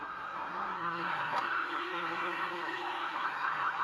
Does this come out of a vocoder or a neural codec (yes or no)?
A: yes